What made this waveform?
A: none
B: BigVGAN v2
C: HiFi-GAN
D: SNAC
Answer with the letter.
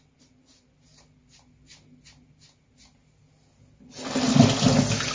A